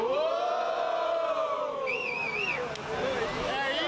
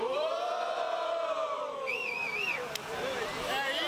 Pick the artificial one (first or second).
second